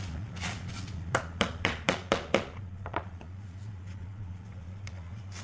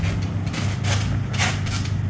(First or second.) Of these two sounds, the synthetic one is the first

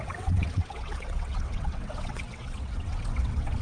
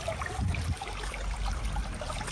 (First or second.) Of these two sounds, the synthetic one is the first